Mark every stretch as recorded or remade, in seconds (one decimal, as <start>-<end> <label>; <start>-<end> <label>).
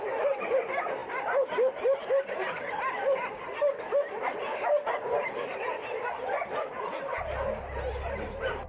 0.0-8.7 recorded